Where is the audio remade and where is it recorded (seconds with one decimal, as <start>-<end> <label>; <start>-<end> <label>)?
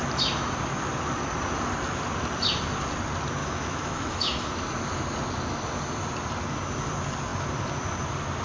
0.0-3.4 recorded; 3.4-4.5 remade; 4.5-8.4 recorded